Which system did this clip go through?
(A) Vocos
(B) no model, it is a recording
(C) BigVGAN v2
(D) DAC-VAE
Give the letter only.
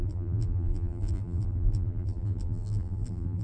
C